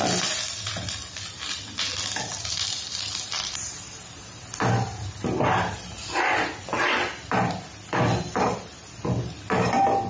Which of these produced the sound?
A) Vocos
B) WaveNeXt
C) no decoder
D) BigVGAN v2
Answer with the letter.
C